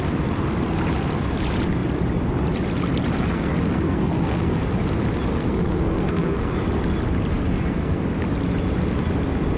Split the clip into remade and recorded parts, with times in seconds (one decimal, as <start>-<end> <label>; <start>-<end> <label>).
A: 0.0-3.2 recorded; 3.2-4.7 remade; 4.7-5.3 recorded; 5.3-6.5 remade; 6.5-7.4 recorded; 7.4-8.0 remade; 8.0-9.6 recorded